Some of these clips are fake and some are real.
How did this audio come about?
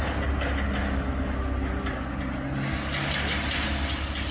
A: real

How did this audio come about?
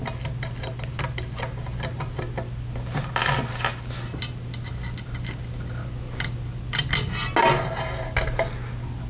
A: real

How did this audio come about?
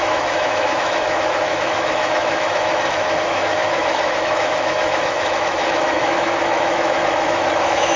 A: fake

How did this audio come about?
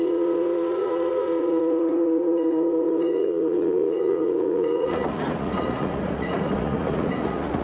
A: fake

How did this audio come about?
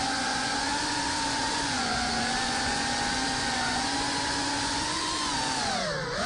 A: fake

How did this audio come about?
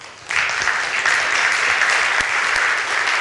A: real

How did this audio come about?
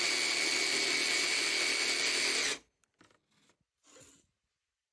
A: real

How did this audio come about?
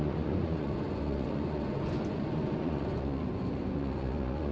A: fake